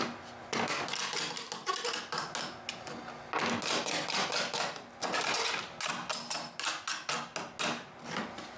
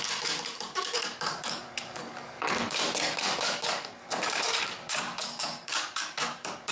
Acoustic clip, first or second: first